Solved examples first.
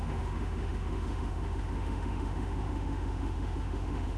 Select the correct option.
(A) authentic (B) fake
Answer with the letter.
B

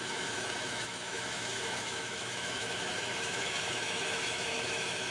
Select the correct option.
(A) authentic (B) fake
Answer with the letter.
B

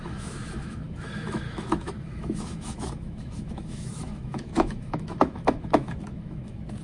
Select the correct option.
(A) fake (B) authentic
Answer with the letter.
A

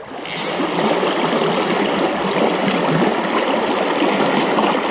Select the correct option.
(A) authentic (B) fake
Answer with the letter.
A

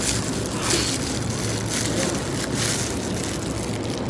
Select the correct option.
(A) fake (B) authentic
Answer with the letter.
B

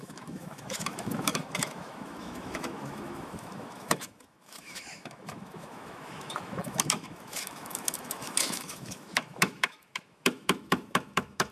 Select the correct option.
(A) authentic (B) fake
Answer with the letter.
B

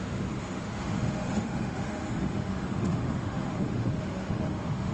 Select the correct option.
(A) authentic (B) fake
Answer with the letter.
B